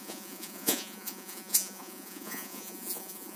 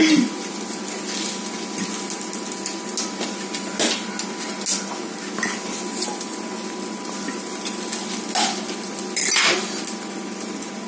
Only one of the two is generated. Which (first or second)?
first